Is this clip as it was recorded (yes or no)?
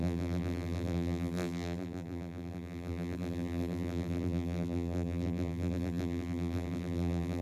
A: no